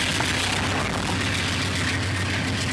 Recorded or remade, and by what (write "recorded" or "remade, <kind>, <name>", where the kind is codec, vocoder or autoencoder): recorded